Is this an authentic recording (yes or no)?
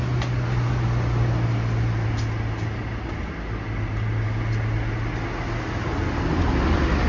yes